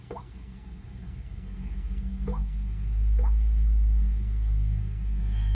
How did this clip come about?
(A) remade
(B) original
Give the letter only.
A